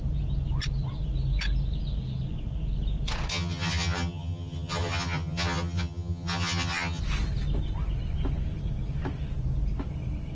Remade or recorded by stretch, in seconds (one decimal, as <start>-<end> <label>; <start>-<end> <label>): 0.0-3.3 recorded; 3.3-7.0 remade; 7.0-10.3 recorded